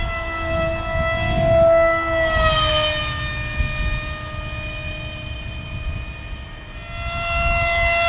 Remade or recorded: recorded